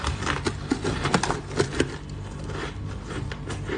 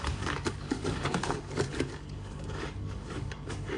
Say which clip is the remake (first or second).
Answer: second